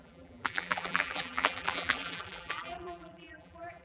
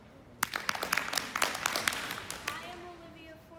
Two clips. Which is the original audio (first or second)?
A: second